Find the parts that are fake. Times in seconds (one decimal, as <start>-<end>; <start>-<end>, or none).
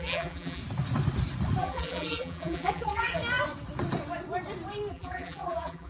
0.0-0.6; 1.6-3.2; 4.9-5.9